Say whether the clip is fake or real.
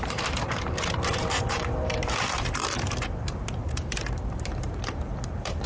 fake